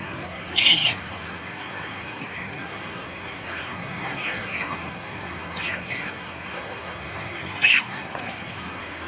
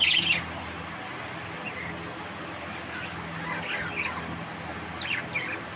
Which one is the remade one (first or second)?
first